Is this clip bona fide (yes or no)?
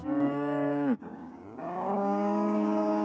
no